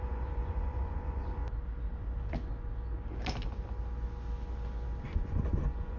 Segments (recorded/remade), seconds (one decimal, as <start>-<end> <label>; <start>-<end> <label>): 0.0-1.4 remade; 1.4-5.0 recorded; 5.0-6.0 remade